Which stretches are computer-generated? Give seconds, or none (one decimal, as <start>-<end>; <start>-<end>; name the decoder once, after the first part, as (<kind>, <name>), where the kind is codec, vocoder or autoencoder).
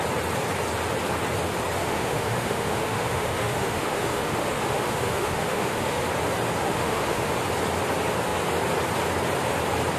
1.8-6.0 (autoencoder, DAC-VAE); 6.6-7.3